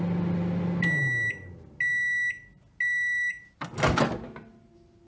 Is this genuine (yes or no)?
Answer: yes